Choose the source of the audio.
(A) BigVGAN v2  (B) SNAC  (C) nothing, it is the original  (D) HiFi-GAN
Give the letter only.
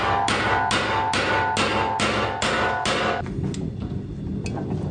C